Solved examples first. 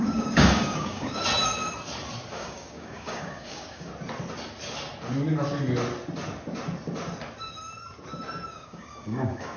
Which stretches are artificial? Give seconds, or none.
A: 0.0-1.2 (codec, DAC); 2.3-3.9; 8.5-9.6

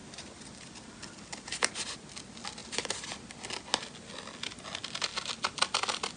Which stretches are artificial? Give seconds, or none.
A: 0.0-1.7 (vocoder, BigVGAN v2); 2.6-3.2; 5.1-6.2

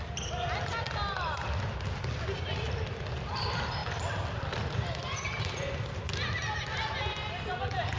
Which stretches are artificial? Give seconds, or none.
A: none

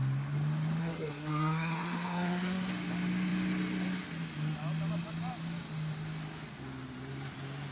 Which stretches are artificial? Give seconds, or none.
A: 0.8-2.7 (codec, SNAC)

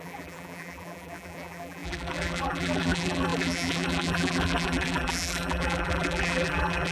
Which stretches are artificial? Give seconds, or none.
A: 0.0-6.9 (vocoder, BigVGAN v2)

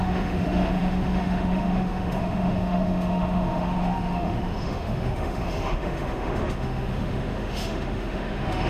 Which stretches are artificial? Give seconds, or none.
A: 0.0-8.7 (autoencoder, DAC-VAE)

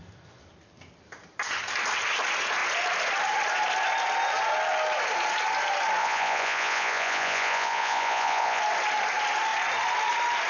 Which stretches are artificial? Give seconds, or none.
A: 6.0-8.6 (vocoder, Vocos)